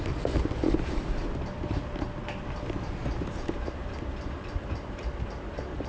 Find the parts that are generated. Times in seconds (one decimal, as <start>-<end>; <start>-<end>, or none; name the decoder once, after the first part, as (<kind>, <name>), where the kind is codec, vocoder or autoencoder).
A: none